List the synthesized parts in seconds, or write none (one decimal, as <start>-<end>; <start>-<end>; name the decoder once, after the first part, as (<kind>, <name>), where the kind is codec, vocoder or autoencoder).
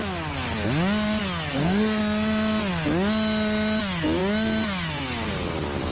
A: 1.5-2.0 (codec, SNAC)